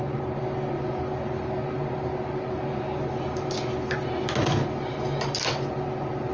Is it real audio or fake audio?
real